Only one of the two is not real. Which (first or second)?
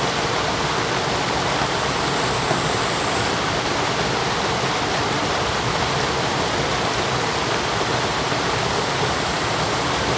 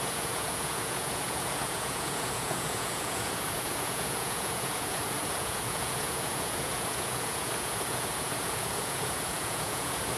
second